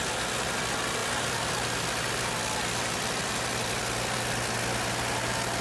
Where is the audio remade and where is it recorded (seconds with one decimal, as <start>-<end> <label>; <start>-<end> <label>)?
0.0-1.0 recorded; 1.0-4.4 remade; 4.4-5.6 recorded